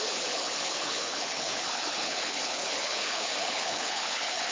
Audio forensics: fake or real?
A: fake